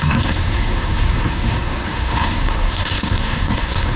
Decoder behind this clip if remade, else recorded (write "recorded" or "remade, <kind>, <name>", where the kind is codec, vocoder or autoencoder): remade, codec, SNAC